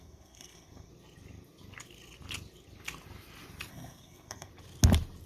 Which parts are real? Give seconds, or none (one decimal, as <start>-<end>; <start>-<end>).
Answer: 0.9-3.7; 4.5-5.3